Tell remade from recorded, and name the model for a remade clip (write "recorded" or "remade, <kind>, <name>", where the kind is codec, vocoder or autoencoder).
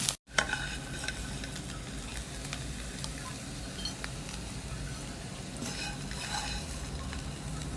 recorded